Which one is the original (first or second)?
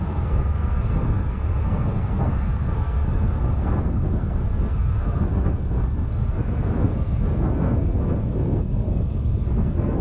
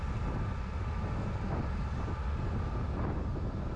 second